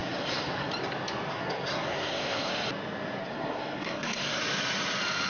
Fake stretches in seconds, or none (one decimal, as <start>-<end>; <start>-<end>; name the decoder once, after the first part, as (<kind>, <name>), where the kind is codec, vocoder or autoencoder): 0.0-0.7 (codec, SNAC); 1.3-2.5; 3.2-4.4